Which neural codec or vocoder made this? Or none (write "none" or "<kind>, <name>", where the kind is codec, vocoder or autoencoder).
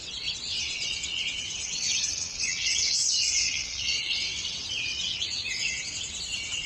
vocoder, WaveNeXt